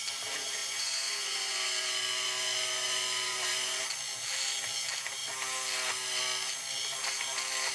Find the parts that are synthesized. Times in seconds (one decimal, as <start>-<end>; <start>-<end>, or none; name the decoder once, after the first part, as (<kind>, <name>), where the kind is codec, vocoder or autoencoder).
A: 0.6-3.8 (vocoder, Vocos)